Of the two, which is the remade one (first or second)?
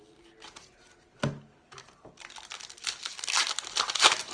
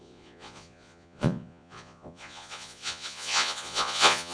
second